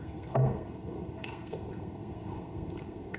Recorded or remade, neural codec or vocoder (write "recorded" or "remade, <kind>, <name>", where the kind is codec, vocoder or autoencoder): remade, codec, SNAC